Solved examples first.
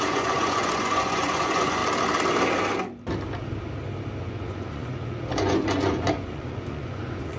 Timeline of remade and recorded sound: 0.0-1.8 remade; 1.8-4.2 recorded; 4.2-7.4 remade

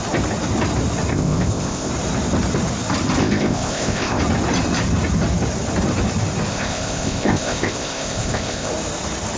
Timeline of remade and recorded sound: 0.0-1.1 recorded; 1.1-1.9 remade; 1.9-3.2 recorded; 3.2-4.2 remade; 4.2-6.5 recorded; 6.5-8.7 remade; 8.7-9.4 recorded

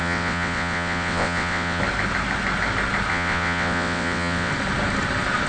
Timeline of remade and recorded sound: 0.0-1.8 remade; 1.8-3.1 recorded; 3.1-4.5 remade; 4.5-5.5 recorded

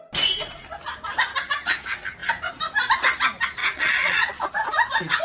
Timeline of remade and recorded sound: 0.0-3.6 recorded; 3.6-4.4 remade; 4.4-5.2 recorded

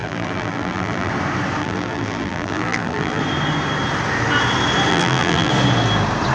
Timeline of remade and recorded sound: 0.0-1.1 remade; 1.1-1.6 recorded; 1.6-3.2 remade; 3.2-4.9 recorded; 4.9-5.5 remade; 5.5-6.3 recorded

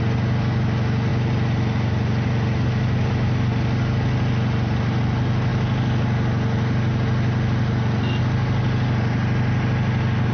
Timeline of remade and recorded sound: 0.0-10.3 recorded

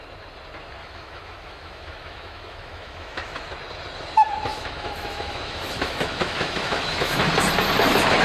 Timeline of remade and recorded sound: 0.0-0.8 recorded; 0.8-3.5 remade; 3.5-4.5 recorded; 4.5-7.3 remade; 7.3-8.2 recorded

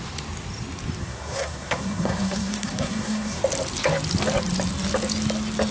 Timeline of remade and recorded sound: 0.0-1.0 recorded; 1.0-3.4 remade; 3.4-5.7 recorded